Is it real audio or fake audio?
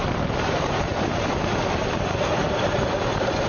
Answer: real